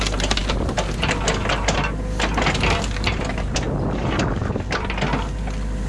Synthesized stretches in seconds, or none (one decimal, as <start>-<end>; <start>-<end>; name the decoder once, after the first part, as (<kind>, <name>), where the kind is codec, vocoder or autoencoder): none